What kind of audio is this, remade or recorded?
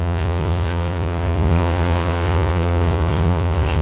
remade